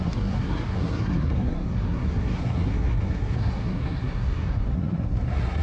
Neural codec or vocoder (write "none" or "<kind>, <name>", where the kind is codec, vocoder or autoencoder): codec, SNAC